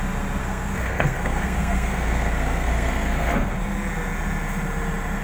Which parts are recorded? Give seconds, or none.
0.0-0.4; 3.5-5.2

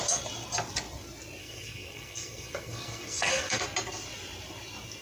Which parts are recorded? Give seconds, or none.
0.0-1.4; 3.6-5.0

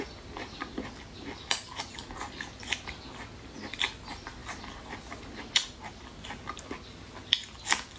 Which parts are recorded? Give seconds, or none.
0.0-8.0

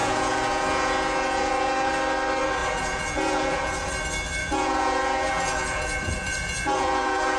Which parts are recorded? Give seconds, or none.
1.9-2.6; 3.9-4.4